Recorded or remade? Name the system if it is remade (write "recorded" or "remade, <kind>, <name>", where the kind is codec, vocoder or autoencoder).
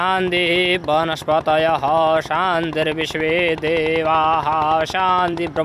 remade, vocoder, BigVGAN v2